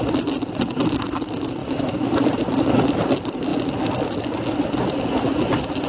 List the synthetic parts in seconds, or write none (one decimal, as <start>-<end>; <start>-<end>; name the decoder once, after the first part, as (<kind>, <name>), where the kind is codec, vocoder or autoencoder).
1.6-2.8 (vocoder, BigVGAN v2)